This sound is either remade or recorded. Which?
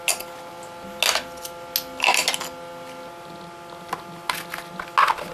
recorded